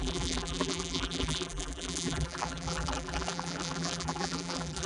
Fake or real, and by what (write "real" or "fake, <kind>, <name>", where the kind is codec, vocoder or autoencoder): fake, vocoder, BigVGAN v2